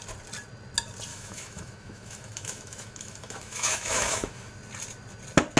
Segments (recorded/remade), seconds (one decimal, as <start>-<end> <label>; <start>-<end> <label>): 0.0-1.1 recorded; 1.1-4.5 remade; 4.5-5.6 recorded